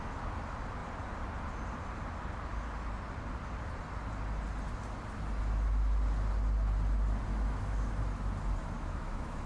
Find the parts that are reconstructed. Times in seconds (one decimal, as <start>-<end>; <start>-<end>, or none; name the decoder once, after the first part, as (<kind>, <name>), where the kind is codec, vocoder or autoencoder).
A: 7.3-8.0 (autoencoder, DAC-VAE); 8.6-9.5